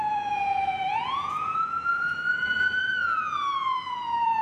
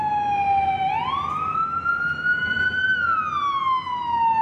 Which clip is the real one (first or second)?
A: second